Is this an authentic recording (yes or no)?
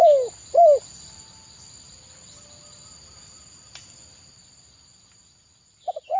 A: yes